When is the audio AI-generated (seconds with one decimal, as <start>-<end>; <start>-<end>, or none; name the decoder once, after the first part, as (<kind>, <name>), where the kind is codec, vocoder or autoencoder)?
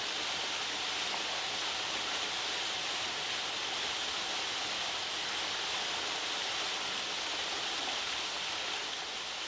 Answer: none